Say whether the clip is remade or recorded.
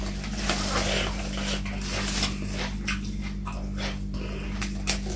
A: recorded